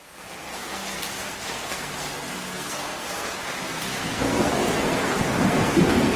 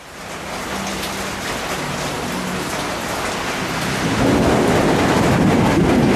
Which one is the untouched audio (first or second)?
second